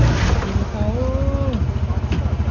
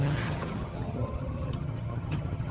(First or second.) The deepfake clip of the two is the second